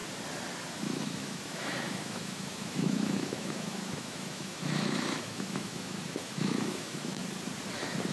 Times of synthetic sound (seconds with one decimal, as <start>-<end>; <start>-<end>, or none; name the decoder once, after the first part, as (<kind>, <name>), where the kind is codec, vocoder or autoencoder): 0.7-7.2 (autoencoder, DAC-VAE)